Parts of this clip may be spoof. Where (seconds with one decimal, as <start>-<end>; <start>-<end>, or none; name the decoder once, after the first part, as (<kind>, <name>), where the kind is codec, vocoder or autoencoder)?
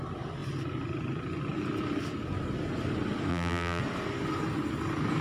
3.3-3.8 (vocoder, BigVGAN v2)